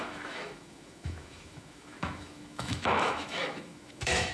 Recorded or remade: remade